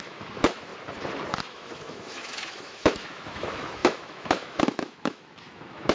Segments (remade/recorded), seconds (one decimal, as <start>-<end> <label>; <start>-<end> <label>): 0.0-0.7 remade; 0.7-1.5 recorded; 1.5-5.9 remade